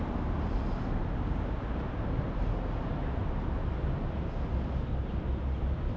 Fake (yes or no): no